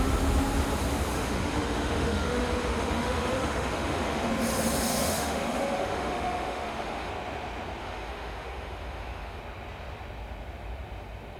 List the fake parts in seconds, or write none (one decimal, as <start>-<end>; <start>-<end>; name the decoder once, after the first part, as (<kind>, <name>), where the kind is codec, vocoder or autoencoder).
1.1-4.3 (autoencoder, DAC-VAE); 4.9-7.1; 7.8-9.4

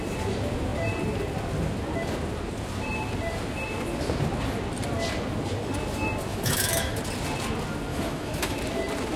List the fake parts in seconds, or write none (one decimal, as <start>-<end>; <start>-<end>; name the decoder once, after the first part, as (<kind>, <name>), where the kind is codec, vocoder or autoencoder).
6.3-7.0 (autoencoder, DAC-VAE); 7.9-8.6

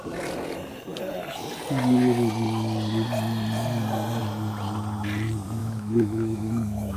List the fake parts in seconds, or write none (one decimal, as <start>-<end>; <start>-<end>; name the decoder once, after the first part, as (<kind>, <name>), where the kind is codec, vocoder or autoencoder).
5.6-7.0 (autoencoder, DAC-VAE)

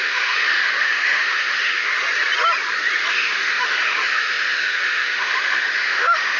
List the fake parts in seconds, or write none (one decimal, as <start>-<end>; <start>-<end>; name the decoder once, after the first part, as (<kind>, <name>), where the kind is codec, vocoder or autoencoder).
0.0-1.9 (autoencoder, DAC-VAE); 3.1-6.4